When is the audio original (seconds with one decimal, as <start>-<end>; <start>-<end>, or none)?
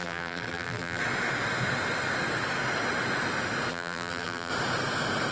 1.0-3.7; 4.5-5.3